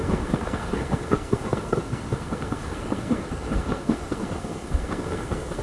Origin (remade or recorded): remade